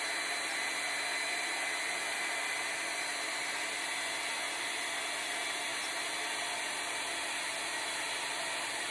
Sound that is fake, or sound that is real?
real